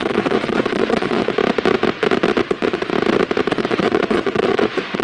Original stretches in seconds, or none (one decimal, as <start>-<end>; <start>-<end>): 1.4-2.4; 2.9-3.5